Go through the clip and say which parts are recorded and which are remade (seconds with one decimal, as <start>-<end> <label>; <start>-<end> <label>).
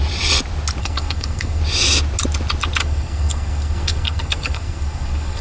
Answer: 0.0-0.8 recorded; 0.8-1.6 remade; 1.6-2.8 recorded; 2.8-5.4 remade